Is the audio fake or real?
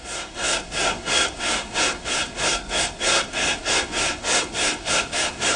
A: fake